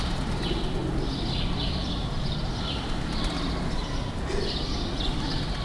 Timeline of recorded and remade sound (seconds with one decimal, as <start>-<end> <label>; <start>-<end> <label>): 0.0-5.6 recorded